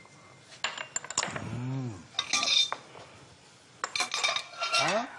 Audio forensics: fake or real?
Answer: real